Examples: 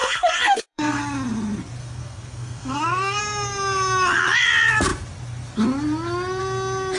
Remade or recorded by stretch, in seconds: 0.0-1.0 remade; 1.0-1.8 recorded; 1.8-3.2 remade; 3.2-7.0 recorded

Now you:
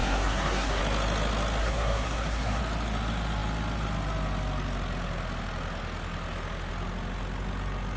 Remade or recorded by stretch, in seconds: 0.0-0.8 remade; 0.8-1.6 recorded; 1.6-2.6 remade; 2.6-8.0 recorded

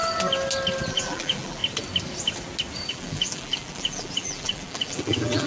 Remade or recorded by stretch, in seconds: 0.0-0.9 recorded; 0.9-1.6 remade; 1.6-2.9 recorded; 2.9-5.5 remade

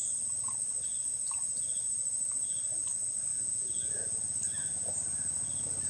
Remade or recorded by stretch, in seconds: 0.0-3.3 recorded; 3.3-4.9 remade; 4.9-5.9 recorded